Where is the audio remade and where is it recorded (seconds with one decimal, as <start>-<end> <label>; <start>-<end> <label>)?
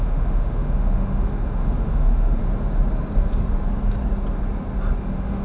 0.0-2.4 remade; 2.4-5.0 recorded; 5.0-5.4 remade